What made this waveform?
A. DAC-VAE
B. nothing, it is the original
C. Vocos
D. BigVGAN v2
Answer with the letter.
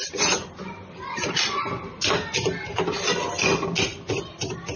B